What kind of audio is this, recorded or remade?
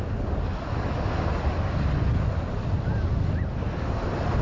recorded